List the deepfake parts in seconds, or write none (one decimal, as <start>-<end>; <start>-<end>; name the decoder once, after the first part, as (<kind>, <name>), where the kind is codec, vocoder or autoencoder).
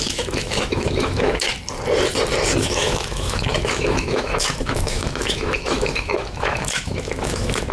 0.0-1.5 (autoencoder, DAC-VAE); 2.6-7.7